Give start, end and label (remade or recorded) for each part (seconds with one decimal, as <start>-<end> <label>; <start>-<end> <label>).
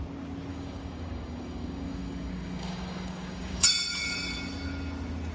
0.0-0.5 recorded; 0.5-3.7 remade; 3.7-5.3 recorded